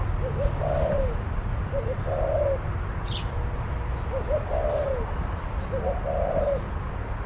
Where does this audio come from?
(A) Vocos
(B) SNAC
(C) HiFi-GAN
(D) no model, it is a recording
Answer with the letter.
D